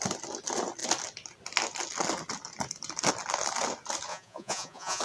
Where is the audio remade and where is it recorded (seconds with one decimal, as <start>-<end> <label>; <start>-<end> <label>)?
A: 0.0-4.1 recorded; 4.1-5.0 remade